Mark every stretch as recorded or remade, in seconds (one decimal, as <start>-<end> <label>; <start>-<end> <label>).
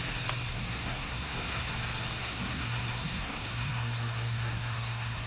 0.0-0.5 recorded; 0.5-1.7 remade; 1.7-2.2 recorded; 2.2-5.3 remade